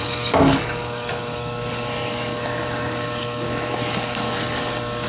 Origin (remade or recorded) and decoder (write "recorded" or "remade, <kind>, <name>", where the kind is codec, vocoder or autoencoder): remade, codec, DAC